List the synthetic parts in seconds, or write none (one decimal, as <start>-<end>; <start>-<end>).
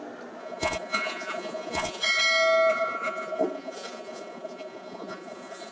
0.4-2.2; 2.7-5.7